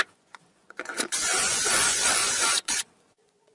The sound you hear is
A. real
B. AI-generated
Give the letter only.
B